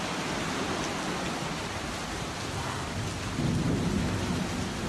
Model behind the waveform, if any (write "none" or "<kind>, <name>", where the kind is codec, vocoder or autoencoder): none